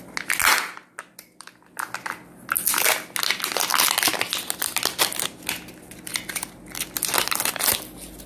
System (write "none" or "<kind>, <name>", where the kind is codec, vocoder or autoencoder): none